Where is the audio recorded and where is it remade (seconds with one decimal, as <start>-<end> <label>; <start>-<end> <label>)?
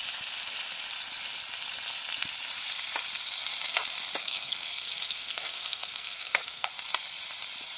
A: 0.0-4.2 recorded; 4.2-6.7 remade; 6.7-7.8 recorded